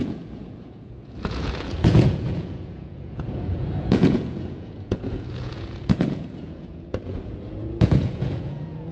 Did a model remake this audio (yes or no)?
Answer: yes